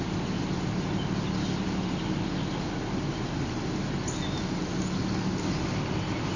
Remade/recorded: recorded